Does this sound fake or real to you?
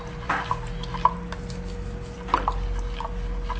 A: real